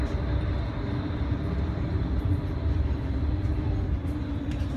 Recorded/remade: remade